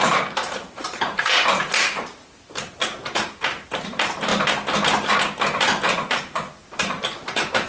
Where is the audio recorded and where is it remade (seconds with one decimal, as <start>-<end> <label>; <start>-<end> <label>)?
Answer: 0.0-4.3 remade; 4.3-5.1 recorded; 5.1-7.7 remade